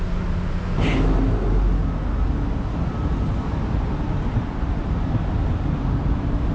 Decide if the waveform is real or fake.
real